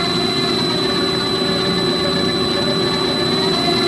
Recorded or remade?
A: recorded